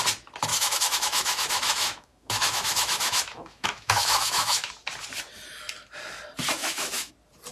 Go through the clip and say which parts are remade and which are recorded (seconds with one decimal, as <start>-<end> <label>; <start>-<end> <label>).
0.0-0.5 recorded; 0.5-4.7 remade; 4.7-6.6 recorded; 6.6-7.1 remade; 7.1-7.5 recorded